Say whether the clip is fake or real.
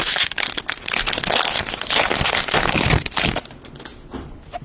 real